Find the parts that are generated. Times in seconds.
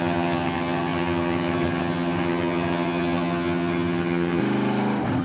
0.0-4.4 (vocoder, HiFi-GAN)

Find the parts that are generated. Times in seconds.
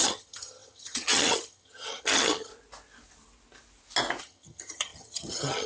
0.0-2.5 (vocoder, HiFi-GAN); 4.2-5.7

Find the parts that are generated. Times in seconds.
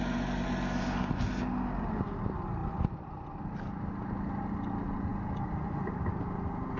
none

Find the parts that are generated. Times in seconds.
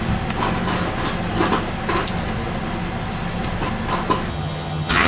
4.3-5.1 (vocoder, HiFi-GAN)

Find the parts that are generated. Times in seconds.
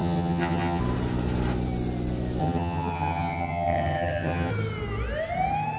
0.0-0.8 (vocoder, HiFi-GAN); 2.4-4.5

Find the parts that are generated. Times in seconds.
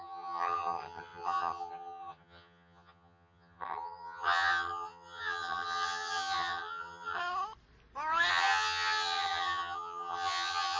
0.0-7.2 (vocoder, HiFi-GAN); 8.3-10.8